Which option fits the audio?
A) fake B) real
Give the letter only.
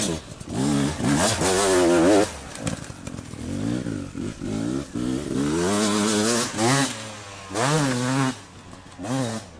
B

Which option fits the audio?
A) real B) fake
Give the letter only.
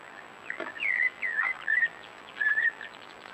B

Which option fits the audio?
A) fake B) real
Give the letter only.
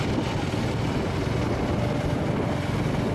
B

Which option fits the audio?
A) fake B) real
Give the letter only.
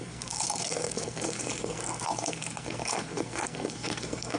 A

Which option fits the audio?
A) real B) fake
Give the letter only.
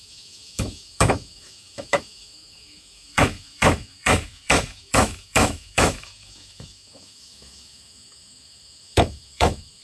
B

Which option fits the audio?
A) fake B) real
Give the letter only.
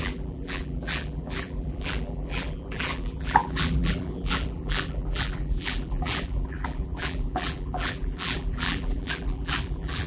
A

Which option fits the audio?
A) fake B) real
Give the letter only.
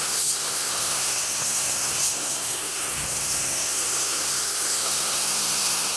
A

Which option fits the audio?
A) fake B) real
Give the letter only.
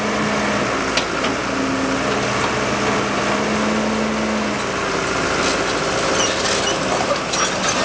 B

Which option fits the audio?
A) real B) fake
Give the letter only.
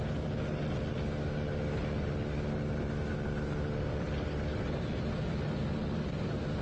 A